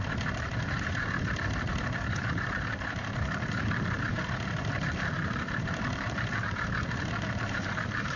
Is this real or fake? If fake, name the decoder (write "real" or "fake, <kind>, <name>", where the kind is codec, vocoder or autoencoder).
fake, vocoder, BigVGAN v2